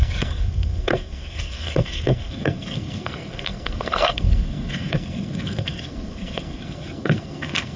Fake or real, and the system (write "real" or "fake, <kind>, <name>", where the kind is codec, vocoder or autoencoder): fake, codec, SNAC